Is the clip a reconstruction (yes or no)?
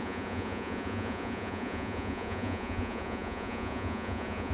yes